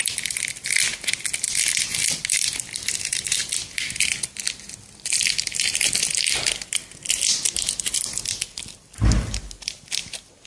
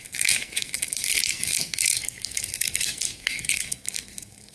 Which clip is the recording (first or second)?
first